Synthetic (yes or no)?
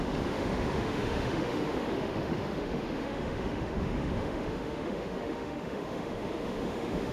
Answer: yes